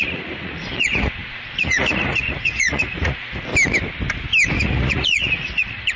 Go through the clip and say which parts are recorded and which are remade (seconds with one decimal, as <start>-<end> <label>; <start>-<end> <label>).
0.0-3.5 remade; 3.5-4.5 recorded; 4.5-6.0 remade